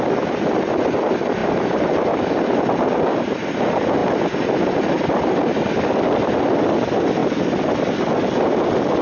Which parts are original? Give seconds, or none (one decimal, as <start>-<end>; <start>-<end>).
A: 0.0-9.0